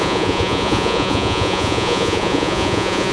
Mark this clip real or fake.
fake